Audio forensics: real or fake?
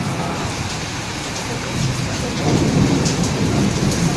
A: fake